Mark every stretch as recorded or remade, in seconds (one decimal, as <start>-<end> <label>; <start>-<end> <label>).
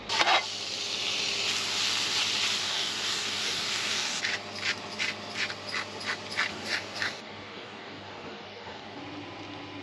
0.0-2.6 recorded; 2.6-4.2 remade; 4.2-6.5 recorded; 6.5-9.0 remade; 9.0-9.8 recorded